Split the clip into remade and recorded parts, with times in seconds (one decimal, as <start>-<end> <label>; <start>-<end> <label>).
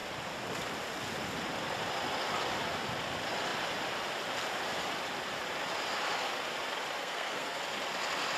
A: 0.0-7.0 recorded; 7.0-7.6 remade; 7.6-8.4 recorded